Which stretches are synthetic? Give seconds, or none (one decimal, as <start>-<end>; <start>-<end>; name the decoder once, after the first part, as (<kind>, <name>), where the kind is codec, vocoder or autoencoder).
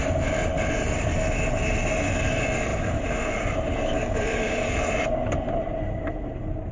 0.0-1.0 (vocoder, BigVGAN v2); 2.7-5.8